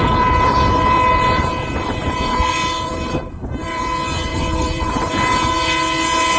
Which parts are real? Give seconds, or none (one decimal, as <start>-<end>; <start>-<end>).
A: 3.8-4.3; 5.1-6.4